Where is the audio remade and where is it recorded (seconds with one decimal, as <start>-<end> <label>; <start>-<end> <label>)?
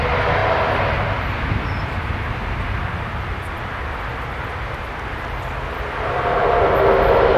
0.0-7.4 recorded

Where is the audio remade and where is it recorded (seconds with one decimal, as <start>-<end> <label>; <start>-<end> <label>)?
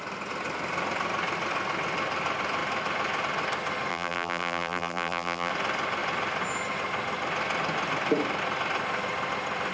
0.0-3.9 recorded; 3.9-5.5 remade; 5.5-9.7 recorded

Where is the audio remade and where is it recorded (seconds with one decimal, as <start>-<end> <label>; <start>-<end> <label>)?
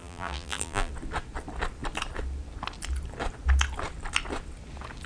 0.0-0.9 remade; 0.9-5.1 recorded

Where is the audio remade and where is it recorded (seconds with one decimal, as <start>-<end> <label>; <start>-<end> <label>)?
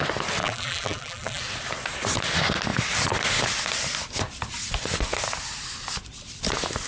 0.0-0.4 recorded; 0.4-1.4 remade; 1.4-6.9 recorded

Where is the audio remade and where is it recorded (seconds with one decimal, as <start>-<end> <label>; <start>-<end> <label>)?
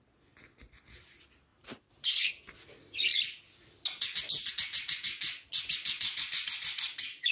0.0-1.5 recorded; 1.5-2.3 remade; 2.3-7.3 recorded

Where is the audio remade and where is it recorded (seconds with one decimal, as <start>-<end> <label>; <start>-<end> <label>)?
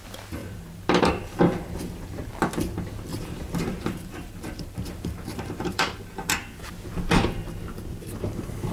0.0-0.4 recorded; 0.4-2.3 remade; 2.3-3.1 recorded; 3.1-6.7 remade; 6.7-8.7 recorded